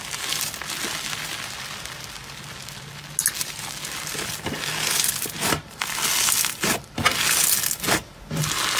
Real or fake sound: real